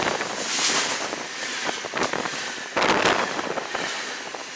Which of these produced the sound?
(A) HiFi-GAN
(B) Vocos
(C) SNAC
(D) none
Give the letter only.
D